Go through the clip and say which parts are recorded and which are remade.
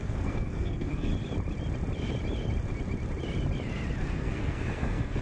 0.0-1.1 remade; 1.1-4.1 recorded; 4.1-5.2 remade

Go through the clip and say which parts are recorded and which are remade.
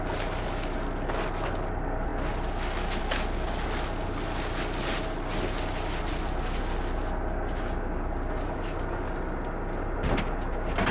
0.0-10.9 recorded